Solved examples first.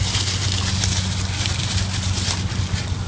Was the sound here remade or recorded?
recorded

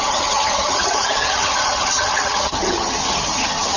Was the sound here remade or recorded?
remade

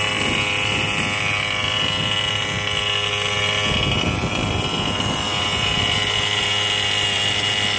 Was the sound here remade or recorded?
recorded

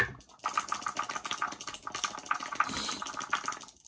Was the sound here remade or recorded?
recorded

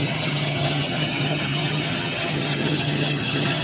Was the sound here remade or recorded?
remade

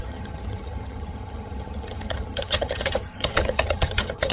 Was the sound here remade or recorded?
remade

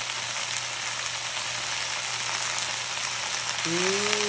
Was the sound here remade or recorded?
recorded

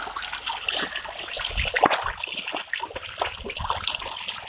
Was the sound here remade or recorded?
recorded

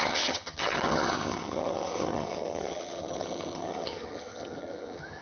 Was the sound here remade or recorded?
remade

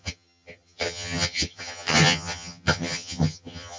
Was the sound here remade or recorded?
remade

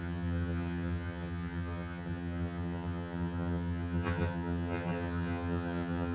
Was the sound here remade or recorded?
remade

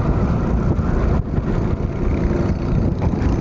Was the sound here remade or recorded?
recorded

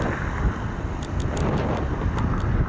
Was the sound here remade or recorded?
recorded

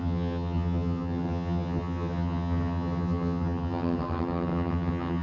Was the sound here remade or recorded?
remade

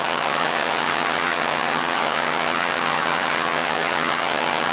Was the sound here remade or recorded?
remade